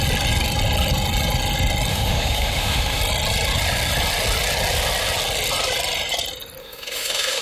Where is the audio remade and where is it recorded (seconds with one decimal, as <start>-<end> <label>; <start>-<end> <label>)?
0.0-1.9 recorded; 1.9-3.0 remade; 3.0-6.6 recorded; 6.6-7.4 remade